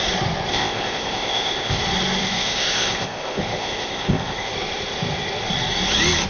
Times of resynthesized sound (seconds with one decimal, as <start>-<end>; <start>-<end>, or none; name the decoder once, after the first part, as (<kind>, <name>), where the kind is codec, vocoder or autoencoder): 0.5-1.8 (codec, ZipCodec); 2.2-4.5